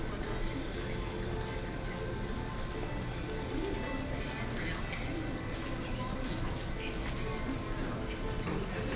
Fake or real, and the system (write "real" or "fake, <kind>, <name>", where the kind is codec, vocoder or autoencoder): real